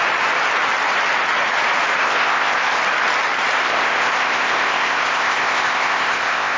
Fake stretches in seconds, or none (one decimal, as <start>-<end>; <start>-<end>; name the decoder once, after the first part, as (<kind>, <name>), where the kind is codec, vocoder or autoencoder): 2.0-2.8 (codec, ZipCodec); 3.6-6.6